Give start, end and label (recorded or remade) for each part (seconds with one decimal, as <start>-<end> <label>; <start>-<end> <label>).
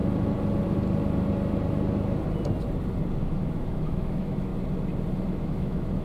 0.0-3.2 recorded; 3.2-4.5 remade; 4.5-5.3 recorded; 5.3-6.0 remade